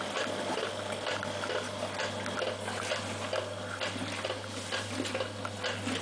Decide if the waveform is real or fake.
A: real